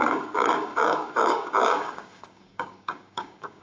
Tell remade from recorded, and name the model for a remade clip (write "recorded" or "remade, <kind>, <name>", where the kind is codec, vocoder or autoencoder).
remade, codec, DAC